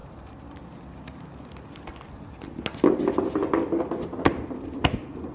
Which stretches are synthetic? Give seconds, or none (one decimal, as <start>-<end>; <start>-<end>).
none